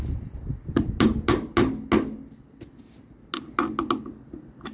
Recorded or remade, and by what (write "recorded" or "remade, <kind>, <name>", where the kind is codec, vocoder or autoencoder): recorded